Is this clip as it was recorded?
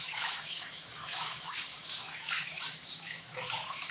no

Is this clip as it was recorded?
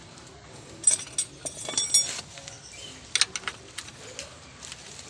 yes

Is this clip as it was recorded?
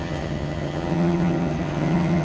no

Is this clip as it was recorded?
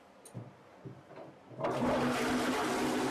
yes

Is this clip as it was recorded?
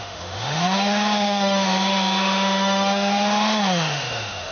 no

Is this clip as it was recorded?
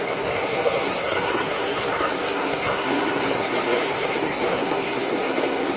no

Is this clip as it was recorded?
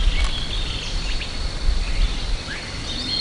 yes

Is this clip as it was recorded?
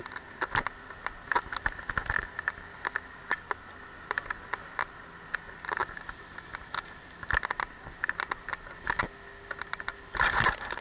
yes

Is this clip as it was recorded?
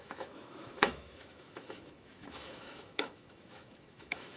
no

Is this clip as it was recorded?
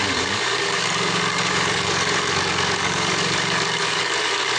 no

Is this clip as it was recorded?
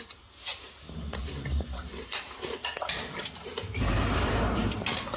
no